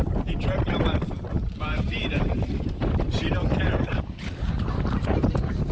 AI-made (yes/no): yes